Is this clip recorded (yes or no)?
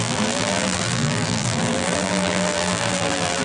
no